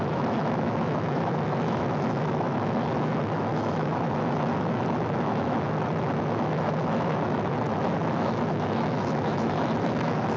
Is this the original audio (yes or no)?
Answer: no